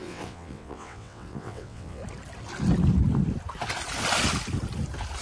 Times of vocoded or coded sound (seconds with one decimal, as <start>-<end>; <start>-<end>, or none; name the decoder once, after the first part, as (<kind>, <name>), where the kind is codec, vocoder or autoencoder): 0.0-2.0 (vocoder, WaveNeXt)